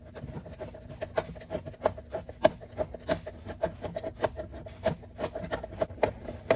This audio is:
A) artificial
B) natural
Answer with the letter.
B